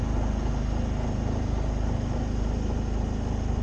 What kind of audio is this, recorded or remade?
recorded